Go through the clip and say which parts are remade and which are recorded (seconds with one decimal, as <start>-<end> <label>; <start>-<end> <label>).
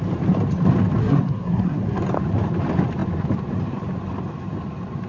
0.0-1.0 recorded; 1.0-2.0 remade; 2.0-5.1 recorded